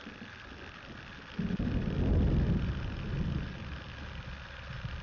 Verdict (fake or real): real